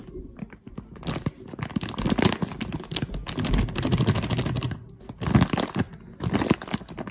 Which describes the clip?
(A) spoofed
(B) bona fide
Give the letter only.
B